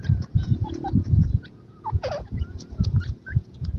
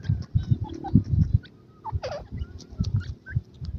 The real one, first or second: second